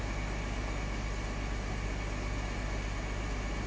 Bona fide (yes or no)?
yes